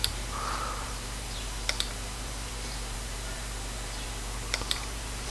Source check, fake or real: fake